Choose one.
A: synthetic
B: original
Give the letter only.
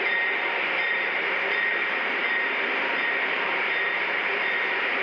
A